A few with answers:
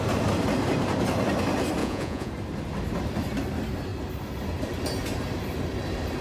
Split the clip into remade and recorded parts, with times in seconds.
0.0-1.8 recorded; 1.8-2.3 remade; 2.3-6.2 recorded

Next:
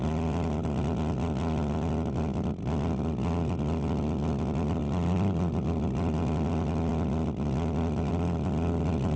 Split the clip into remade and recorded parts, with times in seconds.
0.0-9.2 recorded

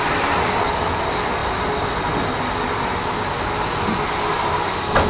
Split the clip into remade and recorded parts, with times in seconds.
0.0-5.1 recorded

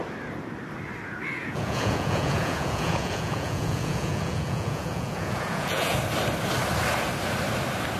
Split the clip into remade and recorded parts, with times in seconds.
0.0-1.4 recorded; 1.4-5.9 remade; 5.9-8.0 recorded

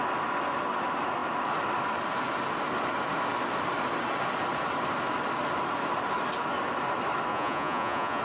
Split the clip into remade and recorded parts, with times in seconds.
0.0-7.3 recorded; 7.3-8.2 remade